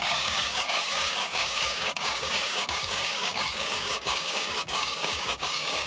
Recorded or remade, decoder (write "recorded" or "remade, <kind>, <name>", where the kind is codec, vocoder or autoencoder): remade, codec, DAC